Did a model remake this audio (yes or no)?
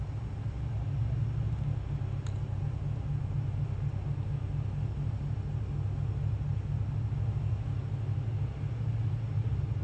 no